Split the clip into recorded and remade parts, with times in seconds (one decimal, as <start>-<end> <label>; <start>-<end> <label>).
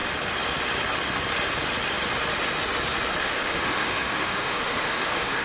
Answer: 0.0-3.2 recorded; 3.2-5.4 remade